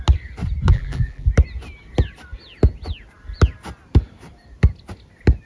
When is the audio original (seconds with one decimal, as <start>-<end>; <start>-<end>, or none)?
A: 0.0-0.7; 1.3-5.5